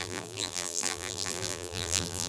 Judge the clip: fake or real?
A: fake